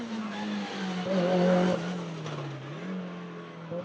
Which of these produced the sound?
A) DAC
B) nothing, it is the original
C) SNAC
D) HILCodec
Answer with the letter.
B